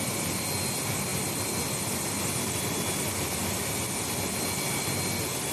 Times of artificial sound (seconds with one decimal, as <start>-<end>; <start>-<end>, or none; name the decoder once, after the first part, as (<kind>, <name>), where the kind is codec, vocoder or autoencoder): none